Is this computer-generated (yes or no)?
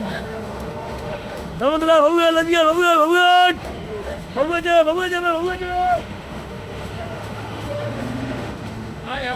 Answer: yes